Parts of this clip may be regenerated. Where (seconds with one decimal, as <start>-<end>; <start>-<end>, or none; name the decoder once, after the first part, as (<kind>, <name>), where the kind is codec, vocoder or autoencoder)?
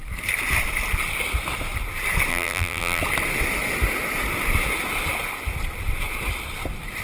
2.3-3.0 (vocoder, BigVGAN v2)